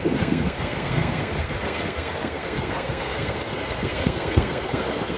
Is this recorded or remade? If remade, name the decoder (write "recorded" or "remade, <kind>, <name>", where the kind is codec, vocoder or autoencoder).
remade, codec, SNAC